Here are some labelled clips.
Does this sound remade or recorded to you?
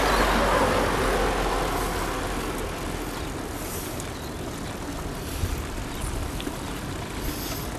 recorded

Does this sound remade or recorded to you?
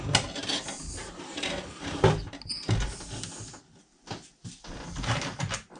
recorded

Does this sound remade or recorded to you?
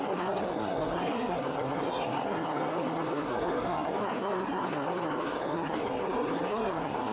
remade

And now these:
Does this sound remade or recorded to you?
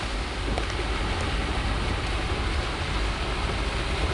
recorded